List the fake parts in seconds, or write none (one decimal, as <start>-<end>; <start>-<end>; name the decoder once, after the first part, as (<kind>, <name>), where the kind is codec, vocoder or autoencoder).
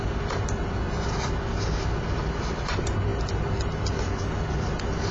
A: none